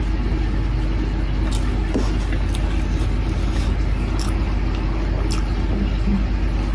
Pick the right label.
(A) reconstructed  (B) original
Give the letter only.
B